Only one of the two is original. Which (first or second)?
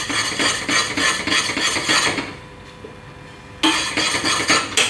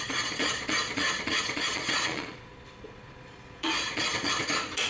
first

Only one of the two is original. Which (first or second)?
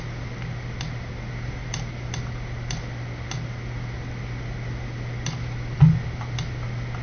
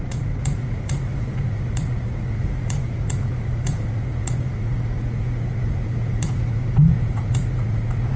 first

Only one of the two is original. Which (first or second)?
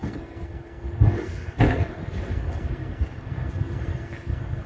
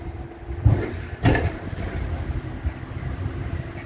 second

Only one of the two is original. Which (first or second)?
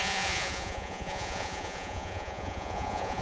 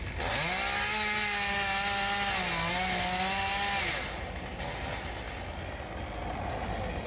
second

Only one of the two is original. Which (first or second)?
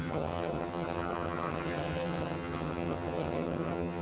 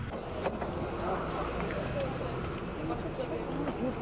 second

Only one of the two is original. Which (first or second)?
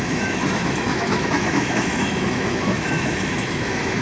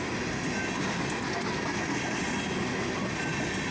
second